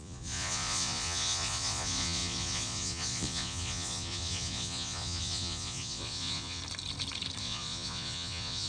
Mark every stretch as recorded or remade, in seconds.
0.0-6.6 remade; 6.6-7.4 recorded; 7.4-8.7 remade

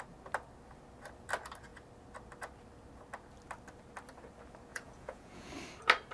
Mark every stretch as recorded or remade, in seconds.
0.0-4.7 recorded; 4.7-5.5 remade; 5.5-6.1 recorded

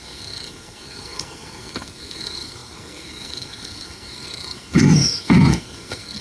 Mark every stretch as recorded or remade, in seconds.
0.0-6.2 remade